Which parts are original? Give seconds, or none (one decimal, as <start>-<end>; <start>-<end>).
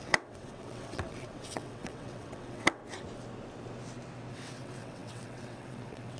2.8-4.3